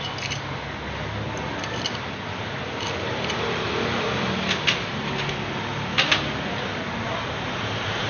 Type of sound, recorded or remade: recorded